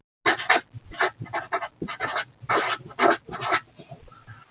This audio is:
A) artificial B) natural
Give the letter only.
B